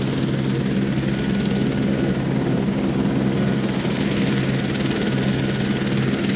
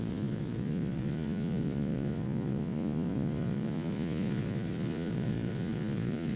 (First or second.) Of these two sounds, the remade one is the second